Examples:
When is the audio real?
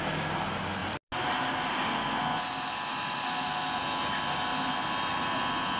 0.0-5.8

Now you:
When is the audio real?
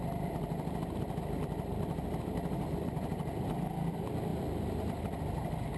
0.0-1.2; 4.3-5.8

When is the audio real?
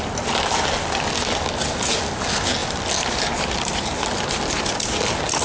0.0-2.6; 5.0-5.4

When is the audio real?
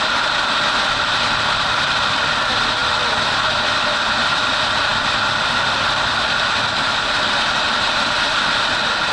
0.0-4.9; 7.1-9.1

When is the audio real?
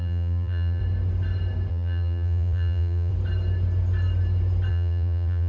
0.8-1.7; 3.1-4.7